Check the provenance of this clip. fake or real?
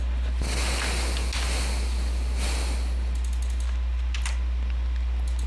real